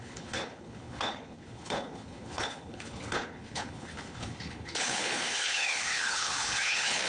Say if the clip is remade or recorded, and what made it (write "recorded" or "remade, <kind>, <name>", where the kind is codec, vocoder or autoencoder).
remade, codec, HILCodec